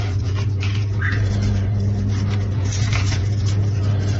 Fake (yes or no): yes